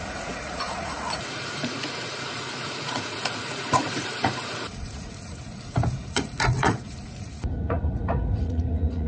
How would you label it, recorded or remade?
remade